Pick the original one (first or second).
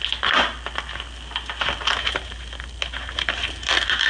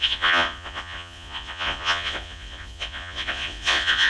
first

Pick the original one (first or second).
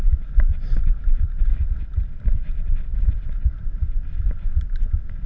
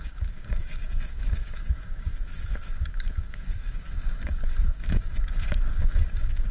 first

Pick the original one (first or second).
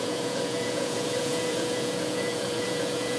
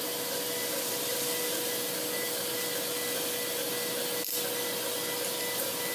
second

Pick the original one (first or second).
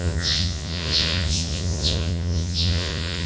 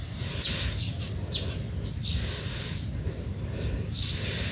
second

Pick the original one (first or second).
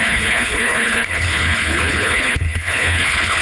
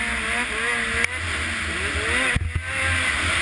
second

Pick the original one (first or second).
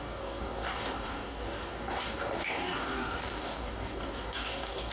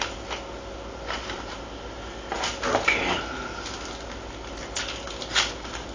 second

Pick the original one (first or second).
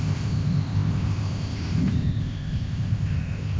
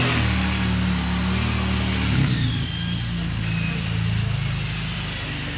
second